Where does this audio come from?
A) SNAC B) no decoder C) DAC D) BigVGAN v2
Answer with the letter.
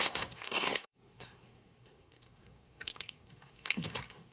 A